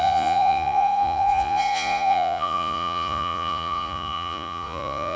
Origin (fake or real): fake